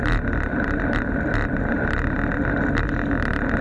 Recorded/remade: recorded